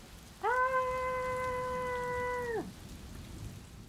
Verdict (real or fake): real